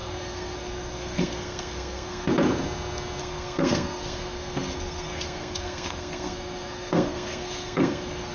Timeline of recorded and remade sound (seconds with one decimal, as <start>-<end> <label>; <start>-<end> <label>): 0.0-2.3 remade; 2.3-3.2 recorded; 3.2-8.3 remade